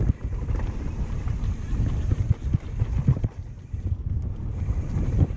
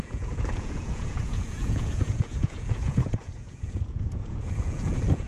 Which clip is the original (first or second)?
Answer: first